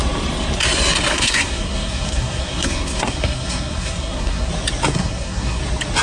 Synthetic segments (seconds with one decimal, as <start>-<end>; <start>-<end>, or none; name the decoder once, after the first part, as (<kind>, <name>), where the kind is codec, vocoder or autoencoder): 1.1-4.5 (codec, SNAC); 4.9-5.6